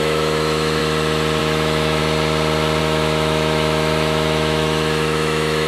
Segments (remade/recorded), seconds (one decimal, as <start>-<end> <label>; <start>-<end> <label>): 0.0-0.8 remade; 0.8-1.4 recorded; 1.4-2.0 remade; 2.0-2.8 recorded; 2.8-5.7 remade